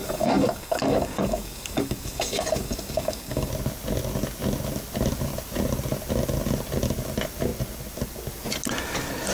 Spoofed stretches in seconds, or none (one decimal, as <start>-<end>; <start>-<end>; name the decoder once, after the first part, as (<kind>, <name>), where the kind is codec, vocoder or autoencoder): 0.0-3.5 (codec, DAC)